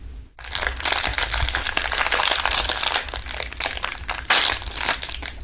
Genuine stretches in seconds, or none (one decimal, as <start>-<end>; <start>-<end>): 0.0-5.4